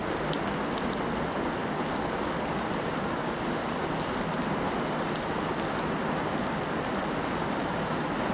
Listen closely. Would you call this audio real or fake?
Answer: real